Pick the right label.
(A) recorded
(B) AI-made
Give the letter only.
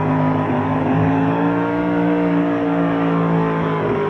B